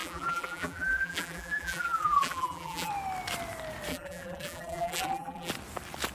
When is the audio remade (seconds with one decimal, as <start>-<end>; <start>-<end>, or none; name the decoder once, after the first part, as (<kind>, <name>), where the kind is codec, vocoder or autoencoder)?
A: 0.0-2.9 (vocoder, BigVGAN v2); 3.9-5.5